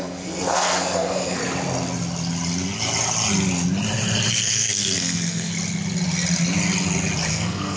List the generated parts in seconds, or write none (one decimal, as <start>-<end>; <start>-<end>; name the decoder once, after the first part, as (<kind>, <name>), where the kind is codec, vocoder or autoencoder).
0.0-1.4 (codec, SNAC); 4.3-5.5; 7.3-7.8